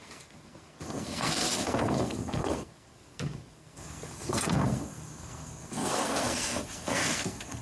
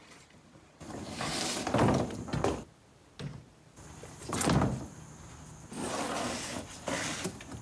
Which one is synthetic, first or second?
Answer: first